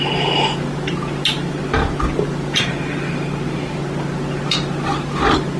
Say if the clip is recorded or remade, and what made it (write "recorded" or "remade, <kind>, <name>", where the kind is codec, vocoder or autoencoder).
recorded